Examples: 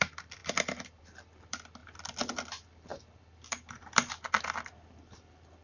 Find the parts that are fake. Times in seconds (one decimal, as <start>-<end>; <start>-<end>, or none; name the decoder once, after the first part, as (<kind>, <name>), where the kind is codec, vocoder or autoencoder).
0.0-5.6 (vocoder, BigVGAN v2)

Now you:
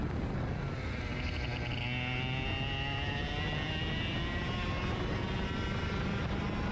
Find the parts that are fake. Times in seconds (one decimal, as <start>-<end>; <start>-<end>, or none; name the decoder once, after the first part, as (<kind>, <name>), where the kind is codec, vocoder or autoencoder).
none

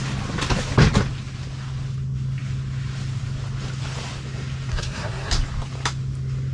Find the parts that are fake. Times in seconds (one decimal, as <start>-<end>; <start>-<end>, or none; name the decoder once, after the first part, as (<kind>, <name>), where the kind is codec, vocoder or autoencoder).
4.7-5.3 (codec, SNAC)